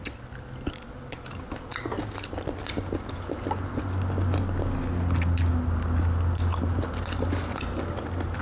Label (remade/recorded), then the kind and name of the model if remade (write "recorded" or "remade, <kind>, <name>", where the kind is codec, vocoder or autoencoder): recorded